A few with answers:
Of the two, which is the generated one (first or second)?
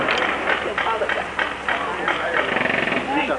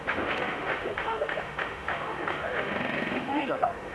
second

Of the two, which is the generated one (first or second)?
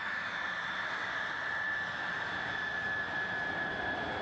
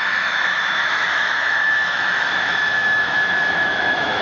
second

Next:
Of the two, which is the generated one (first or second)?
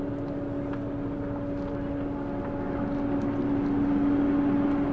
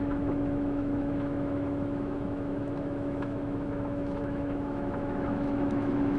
second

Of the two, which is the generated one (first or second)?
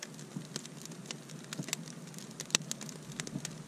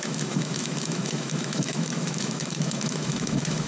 second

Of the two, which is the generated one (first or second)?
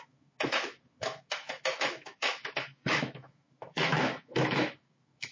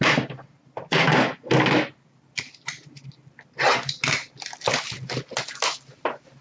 first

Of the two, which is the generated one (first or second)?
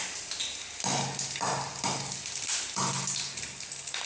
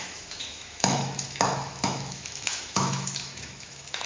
second